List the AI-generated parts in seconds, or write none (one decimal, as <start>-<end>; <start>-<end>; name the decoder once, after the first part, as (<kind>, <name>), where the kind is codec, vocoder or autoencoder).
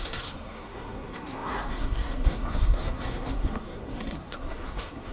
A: 0.0-5.1 (codec, SNAC)